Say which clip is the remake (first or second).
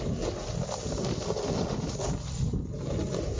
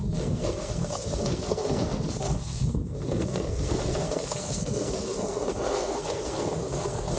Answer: second